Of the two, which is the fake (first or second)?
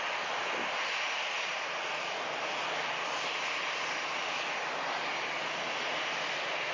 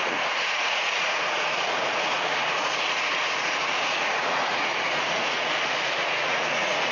second